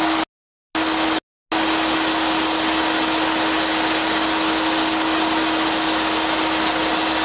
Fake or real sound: real